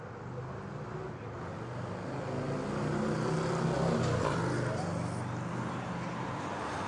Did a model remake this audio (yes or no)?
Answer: no